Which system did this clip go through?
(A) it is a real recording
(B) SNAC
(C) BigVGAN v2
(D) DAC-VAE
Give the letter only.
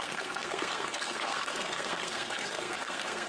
B